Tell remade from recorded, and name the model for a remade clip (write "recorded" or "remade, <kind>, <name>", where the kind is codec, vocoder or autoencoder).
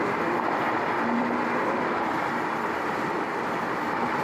remade, vocoder, BigVGAN v2